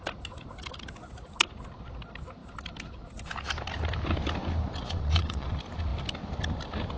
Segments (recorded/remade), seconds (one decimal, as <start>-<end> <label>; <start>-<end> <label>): 0.0-4.8 recorded; 4.8-5.5 remade; 5.5-7.0 recorded